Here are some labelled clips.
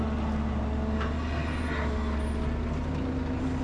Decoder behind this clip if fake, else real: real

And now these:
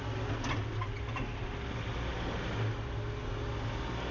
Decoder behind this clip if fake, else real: real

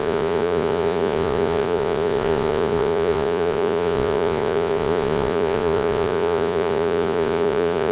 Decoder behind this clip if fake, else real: fake, vocoder, Vocos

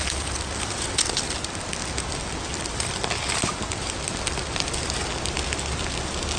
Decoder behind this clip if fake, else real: real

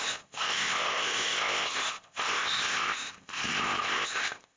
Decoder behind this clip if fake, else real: fake, codec, ZipCodec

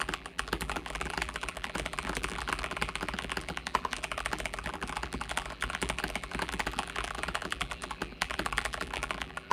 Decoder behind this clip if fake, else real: fake, vocoder, BigVGAN v2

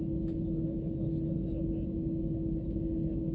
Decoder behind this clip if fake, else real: real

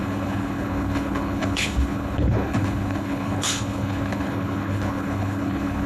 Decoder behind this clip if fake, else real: fake, codec, HILCodec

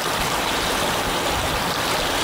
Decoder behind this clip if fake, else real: real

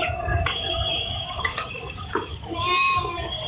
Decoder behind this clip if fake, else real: fake, codec, DAC